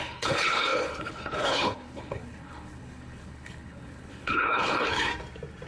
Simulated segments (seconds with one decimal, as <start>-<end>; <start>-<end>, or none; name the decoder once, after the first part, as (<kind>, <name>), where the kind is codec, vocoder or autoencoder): 0.0-5.1 (codec, HILCodec)